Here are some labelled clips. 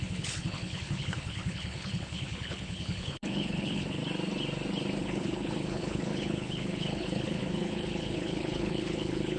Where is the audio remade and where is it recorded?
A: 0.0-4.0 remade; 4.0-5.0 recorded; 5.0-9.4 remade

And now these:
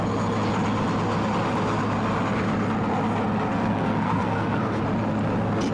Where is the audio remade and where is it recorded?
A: 0.0-3.5 recorded; 3.5-4.8 remade; 4.8-5.7 recorded

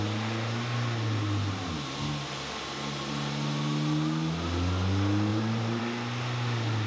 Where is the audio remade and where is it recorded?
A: 0.0-5.3 recorded; 5.3-5.8 remade; 5.8-6.9 recorded